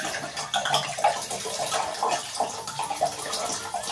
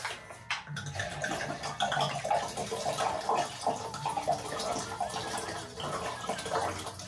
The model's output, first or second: first